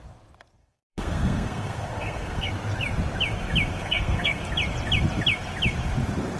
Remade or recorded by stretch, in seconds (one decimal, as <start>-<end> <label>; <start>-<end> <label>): 0.0-0.6 recorded; 0.6-2.5 remade; 2.5-3.8 recorded; 3.8-4.4 remade; 4.4-6.4 recorded